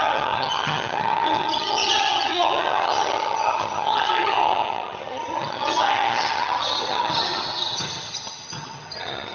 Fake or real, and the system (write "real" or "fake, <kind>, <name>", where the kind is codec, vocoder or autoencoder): fake, vocoder, HiFi-GAN